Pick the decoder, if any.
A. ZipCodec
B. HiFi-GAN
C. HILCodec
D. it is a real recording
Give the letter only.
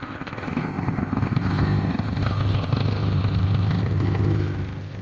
A